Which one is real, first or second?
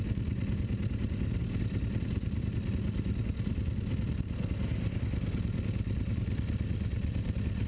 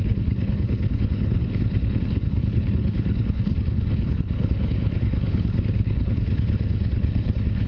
first